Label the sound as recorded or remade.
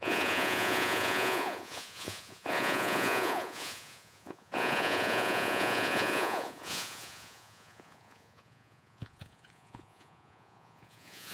remade